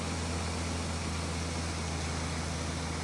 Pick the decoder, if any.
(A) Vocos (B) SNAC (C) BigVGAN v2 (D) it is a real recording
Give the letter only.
D